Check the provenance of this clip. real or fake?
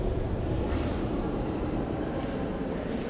fake